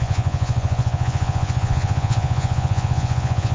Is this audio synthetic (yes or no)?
yes